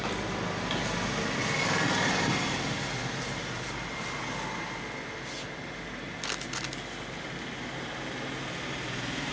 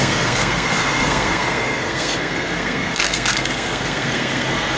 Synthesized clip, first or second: second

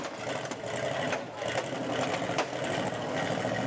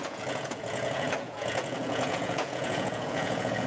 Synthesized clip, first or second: second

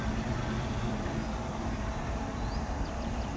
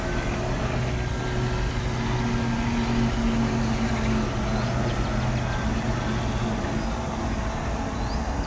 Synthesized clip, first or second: first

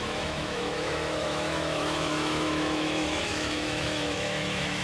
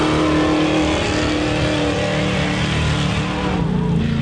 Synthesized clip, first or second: first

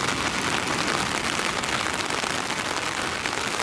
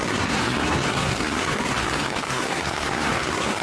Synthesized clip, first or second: second